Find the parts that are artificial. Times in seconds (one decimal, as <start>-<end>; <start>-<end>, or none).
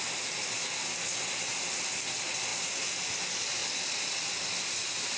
none